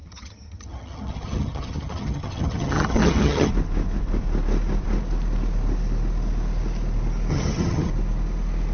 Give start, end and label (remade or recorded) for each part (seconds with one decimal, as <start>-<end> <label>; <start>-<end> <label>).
0.0-3.5 remade; 3.5-7.3 recorded; 7.3-7.9 remade; 7.9-8.7 recorded